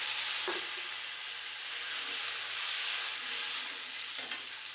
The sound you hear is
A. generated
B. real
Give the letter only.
B